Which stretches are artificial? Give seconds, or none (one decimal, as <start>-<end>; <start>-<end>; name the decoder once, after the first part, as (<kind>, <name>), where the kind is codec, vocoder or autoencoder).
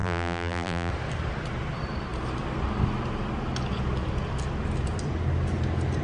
0.0-0.9 (vocoder, BigVGAN v2)